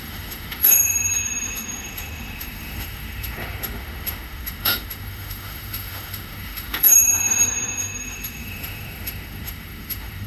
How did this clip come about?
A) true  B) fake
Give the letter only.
B